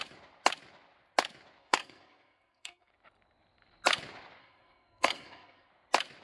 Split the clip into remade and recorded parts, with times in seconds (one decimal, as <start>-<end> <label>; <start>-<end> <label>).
0.0-1.6 recorded; 1.6-2.9 remade; 2.9-4.4 recorded; 4.4-5.7 remade; 5.7-6.2 recorded